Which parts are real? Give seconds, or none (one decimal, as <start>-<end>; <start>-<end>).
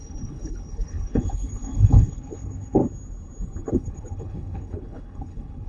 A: 2.8-3.7